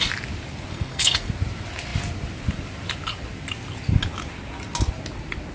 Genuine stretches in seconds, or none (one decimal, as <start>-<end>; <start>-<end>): 0.0-0.7; 1.3-5.5